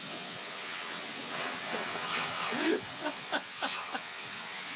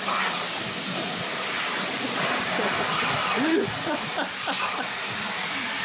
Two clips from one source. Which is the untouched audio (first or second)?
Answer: second